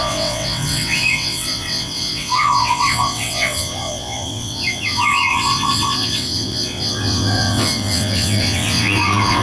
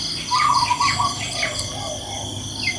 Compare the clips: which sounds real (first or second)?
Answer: second